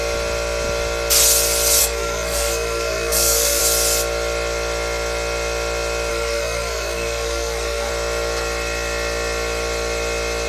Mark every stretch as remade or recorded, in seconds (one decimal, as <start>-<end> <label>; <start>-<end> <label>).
0.0-1.8 recorded; 1.8-3.6 remade; 3.6-6.1 recorded; 6.1-7.9 remade; 7.9-10.5 recorded